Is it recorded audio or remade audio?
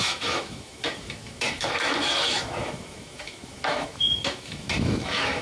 remade